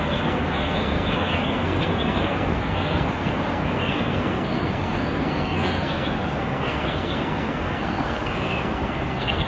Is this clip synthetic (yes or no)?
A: yes